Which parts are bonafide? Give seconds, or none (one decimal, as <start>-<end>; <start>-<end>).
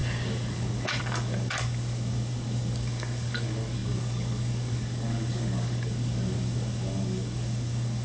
none